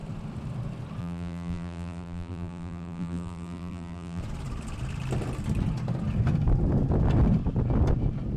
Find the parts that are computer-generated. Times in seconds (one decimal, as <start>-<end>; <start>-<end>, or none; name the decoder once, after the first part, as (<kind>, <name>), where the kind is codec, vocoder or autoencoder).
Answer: 1.0-4.2 (vocoder, BigVGAN v2)